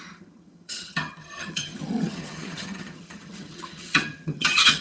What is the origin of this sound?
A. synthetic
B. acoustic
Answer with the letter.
A